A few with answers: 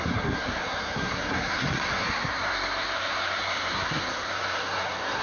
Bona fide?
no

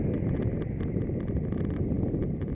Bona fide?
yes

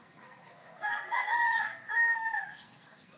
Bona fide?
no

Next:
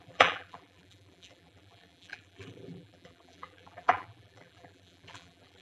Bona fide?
no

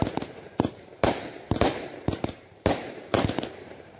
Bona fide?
no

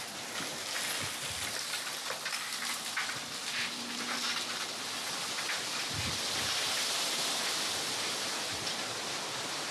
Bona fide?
yes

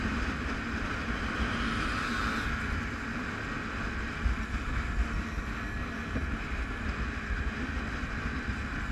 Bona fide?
yes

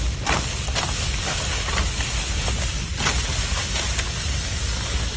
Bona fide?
yes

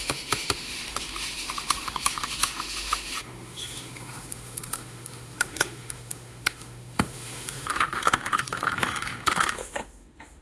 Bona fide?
no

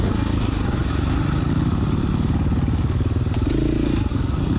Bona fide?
yes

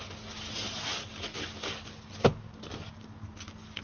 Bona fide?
yes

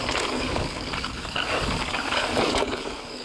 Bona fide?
no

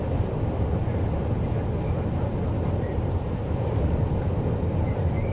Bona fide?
yes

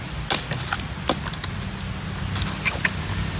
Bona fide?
yes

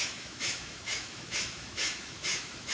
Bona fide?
no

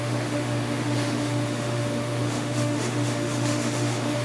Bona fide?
no